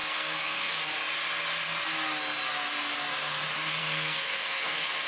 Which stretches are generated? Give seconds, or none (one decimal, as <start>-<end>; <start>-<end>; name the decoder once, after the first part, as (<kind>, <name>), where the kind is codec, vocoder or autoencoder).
0.0-0.8 (codec, SNAC); 3.8-5.1